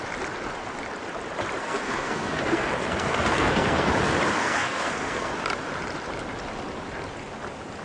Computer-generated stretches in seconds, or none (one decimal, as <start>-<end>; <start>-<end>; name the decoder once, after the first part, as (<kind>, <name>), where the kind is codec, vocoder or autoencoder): 1.6-3.9 (codec, SNAC); 4.4-5.3